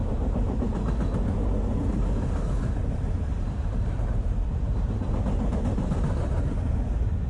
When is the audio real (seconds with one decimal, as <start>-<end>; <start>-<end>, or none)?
1.0-2.8; 5.2-7.3